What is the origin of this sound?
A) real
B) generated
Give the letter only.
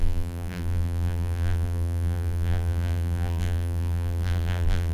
B